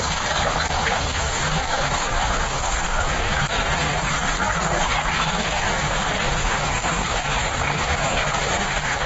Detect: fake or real fake